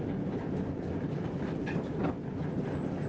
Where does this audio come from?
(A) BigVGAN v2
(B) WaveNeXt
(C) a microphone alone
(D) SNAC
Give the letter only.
C